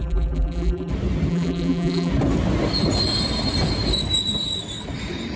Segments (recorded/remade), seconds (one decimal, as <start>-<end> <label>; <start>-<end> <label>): 0.0-0.9 remade; 0.9-1.3 recorded; 1.3-2.1 remade; 2.1-5.4 recorded